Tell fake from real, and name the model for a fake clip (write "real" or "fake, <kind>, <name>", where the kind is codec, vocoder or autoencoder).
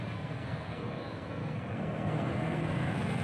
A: fake, codec, SNAC